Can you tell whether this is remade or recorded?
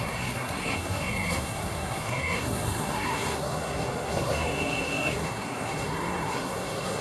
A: remade